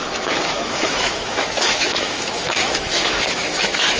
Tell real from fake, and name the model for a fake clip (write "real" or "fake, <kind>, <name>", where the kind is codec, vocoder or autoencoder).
fake, autoencoder, DAC-VAE